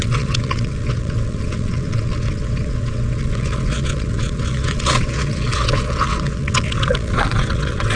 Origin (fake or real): fake